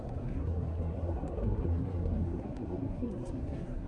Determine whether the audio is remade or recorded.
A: remade